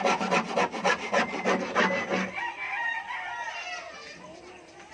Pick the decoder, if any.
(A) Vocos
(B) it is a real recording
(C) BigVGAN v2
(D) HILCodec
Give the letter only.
B